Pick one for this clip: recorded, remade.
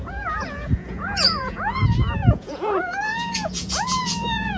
remade